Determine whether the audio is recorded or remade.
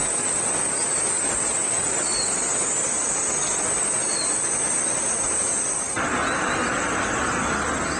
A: recorded